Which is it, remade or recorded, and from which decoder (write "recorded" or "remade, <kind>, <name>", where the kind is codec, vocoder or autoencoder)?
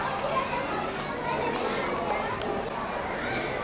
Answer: recorded